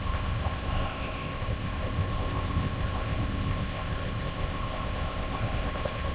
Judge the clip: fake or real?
fake